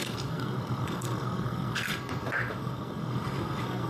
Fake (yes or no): yes